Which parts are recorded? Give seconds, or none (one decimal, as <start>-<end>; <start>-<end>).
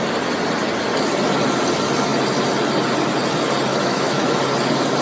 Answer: 0.0-3.7; 4.4-5.0